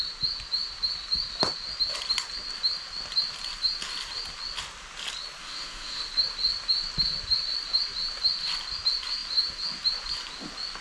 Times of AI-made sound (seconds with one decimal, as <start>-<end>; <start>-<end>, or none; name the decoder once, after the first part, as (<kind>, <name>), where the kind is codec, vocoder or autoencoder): 5.4-6.0 (autoencoder, DAC-VAE)